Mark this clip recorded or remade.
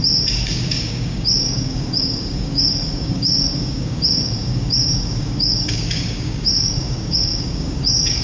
remade